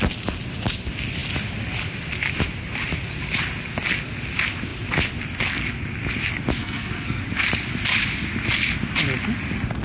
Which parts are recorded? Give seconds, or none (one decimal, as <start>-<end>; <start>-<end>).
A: 0.0-6.6; 7.2-9.8